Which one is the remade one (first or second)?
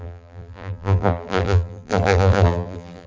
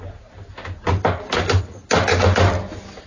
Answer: first